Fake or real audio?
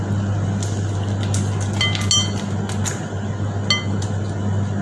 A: real